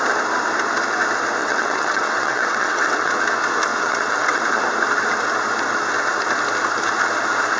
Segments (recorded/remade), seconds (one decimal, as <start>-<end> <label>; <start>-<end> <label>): 0.0-1.4 recorded; 1.4-3.1 remade; 3.1-3.7 recorded; 3.7-4.4 remade; 4.4-7.6 recorded